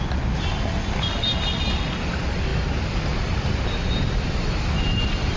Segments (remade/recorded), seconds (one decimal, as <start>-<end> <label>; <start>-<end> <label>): 0.0-5.4 recorded